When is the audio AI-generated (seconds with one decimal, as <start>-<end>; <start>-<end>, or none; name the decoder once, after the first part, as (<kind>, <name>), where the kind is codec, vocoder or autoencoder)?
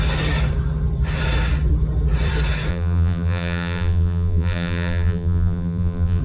2.7-6.2 (vocoder, BigVGAN v2)